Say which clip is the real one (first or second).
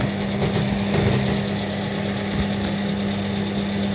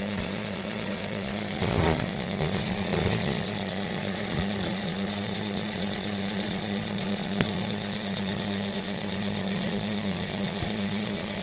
first